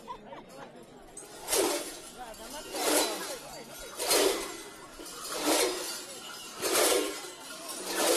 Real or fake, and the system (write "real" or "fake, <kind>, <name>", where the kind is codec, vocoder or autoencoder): real